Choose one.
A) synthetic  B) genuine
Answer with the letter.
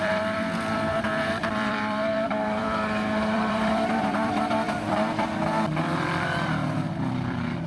A